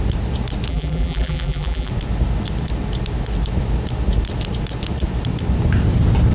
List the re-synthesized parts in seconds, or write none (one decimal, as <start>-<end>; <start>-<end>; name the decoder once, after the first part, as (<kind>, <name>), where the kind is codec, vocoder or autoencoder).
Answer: 0.7-1.9 (vocoder, BigVGAN v2)